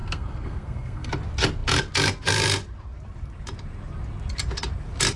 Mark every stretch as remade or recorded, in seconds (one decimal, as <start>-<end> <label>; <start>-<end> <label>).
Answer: 0.0-1.1 remade; 1.1-5.2 recorded